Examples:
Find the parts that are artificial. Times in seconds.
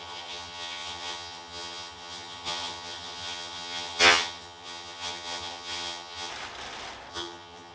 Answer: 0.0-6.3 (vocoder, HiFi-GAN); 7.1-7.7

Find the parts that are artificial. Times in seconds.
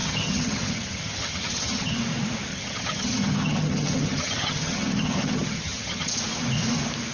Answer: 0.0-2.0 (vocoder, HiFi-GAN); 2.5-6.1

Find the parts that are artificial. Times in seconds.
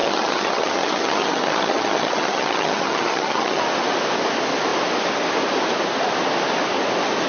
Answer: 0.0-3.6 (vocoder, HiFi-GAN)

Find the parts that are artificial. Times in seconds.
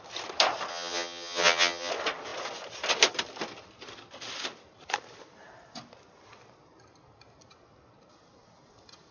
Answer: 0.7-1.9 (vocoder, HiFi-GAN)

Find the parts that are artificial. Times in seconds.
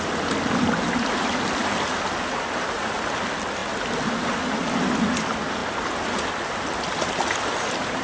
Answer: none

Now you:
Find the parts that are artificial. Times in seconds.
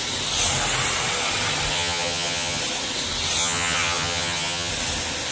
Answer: 1.7-2.6 (vocoder, HiFi-GAN); 3.4-4.7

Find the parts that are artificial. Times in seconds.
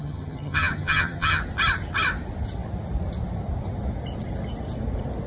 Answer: 0.0-1.4 (vocoder, HiFi-GAN)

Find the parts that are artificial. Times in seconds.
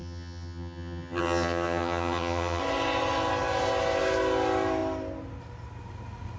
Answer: 0.0-2.6 (vocoder, HiFi-GAN)